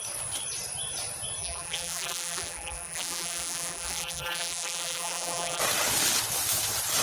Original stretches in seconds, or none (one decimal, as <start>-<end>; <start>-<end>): 0.0-1.4; 5.6-7.0